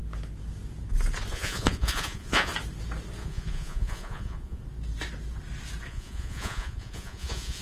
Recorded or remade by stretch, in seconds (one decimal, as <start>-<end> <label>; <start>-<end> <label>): 0.0-1.3 recorded; 1.3-2.5 remade; 2.5-3.2 recorded; 3.2-4.6 remade; 4.6-5.9 recorded; 5.9-7.6 remade